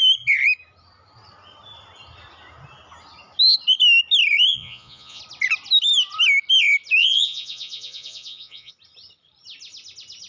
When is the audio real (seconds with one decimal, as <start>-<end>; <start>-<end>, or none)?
0.0-4.5; 5.2-7.0; 8.7-10.3